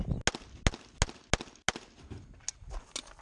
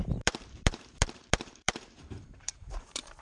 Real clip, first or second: first